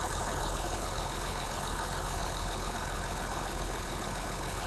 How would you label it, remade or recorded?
remade